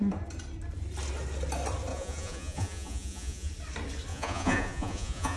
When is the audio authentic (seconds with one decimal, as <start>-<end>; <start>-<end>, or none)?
0.0-1.9; 3.5-4.1